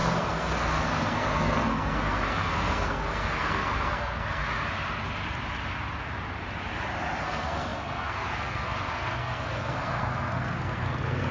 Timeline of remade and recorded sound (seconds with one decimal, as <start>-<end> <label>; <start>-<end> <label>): 0.0-4.4 remade; 4.4-7.2 recorded; 7.2-11.3 remade